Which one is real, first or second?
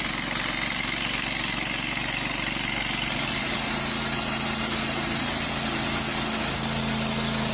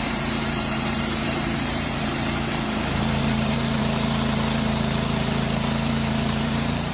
first